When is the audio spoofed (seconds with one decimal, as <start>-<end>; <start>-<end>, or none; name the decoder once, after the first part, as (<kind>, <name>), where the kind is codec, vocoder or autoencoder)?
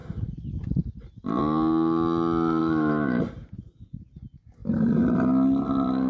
2.6-3.2 (autoencoder, DAC-VAE)